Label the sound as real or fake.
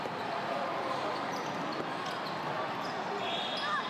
real